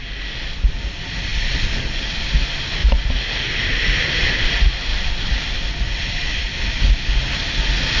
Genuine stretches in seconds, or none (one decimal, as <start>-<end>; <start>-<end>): 0.0-4.9; 6.9-8.0